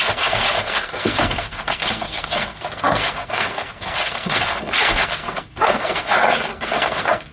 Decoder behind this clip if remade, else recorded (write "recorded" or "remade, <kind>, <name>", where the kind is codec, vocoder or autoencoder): remade, codec, SNAC